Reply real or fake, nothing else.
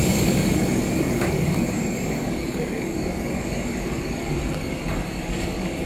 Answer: fake